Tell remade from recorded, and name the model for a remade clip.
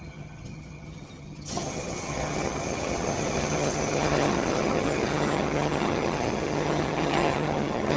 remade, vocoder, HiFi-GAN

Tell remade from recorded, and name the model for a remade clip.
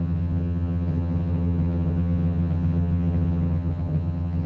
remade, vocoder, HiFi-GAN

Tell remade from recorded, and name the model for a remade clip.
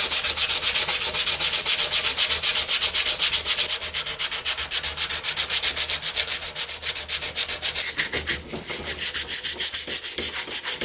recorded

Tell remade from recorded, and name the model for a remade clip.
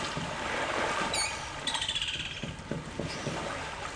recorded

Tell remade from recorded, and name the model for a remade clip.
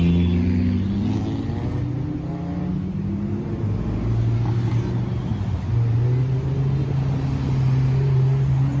recorded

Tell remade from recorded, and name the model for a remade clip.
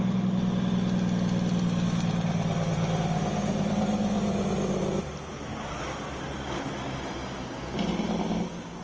recorded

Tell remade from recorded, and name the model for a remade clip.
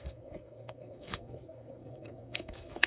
remade, codec, SNAC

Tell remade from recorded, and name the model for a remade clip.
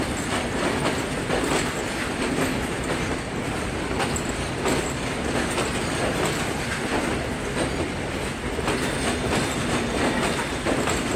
recorded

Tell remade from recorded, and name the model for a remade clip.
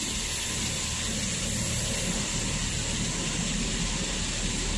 recorded